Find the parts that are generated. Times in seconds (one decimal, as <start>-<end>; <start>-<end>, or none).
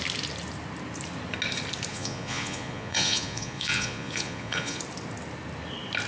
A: 1.9-4.8